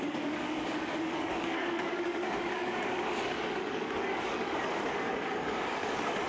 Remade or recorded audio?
remade